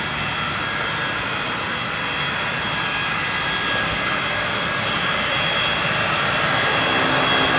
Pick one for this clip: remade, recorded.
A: recorded